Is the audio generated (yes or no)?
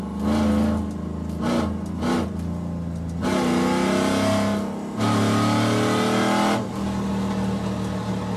no